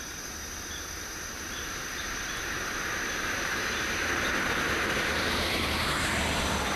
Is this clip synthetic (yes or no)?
yes